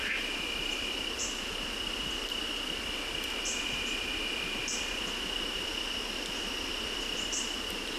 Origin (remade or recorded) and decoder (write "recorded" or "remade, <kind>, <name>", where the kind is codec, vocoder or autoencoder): recorded